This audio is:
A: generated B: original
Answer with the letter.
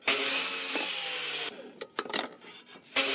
B